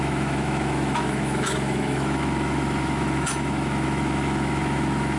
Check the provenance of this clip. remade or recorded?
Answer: remade